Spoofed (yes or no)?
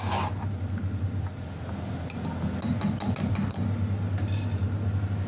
no